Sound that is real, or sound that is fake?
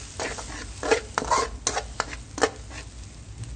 real